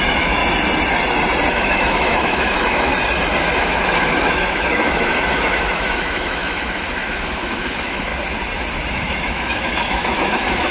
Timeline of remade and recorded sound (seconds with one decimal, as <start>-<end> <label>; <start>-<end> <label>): 0.0-0.4 remade; 0.4-1.5 recorded; 1.5-2.9 remade; 2.9-3.6 recorded; 3.6-8.1 remade; 8.1-8.9 recorded; 8.9-10.7 remade